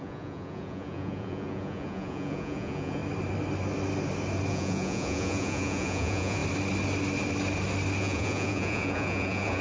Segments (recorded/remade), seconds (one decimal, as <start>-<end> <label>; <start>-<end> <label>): 0.0-3.0 remade; 3.0-4.5 recorded; 4.5-6.4 remade; 6.4-8.0 recorded; 8.0-9.6 remade